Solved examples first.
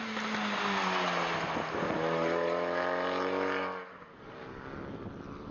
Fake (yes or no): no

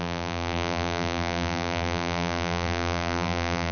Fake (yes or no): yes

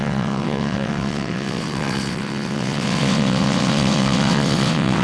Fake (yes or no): yes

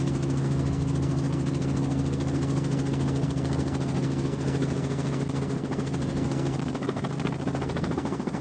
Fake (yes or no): yes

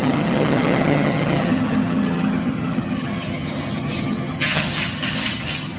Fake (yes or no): yes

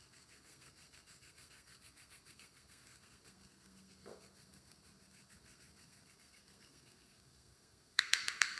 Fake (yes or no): yes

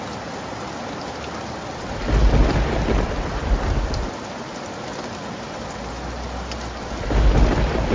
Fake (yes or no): no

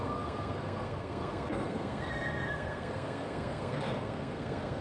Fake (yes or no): yes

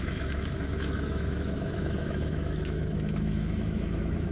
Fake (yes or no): yes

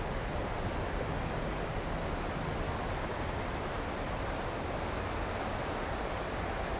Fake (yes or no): no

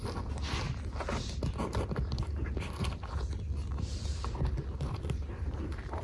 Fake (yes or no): no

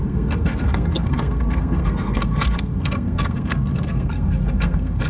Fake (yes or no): yes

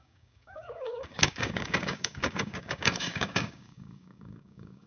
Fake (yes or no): yes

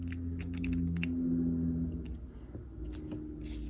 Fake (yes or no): no